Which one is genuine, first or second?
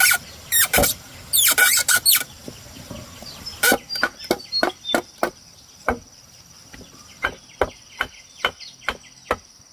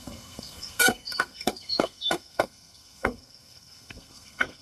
first